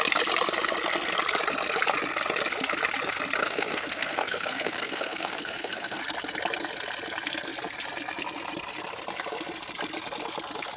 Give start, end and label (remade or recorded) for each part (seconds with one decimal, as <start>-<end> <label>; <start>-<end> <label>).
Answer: 0.0-3.4 recorded; 3.4-6.0 remade; 6.0-10.8 recorded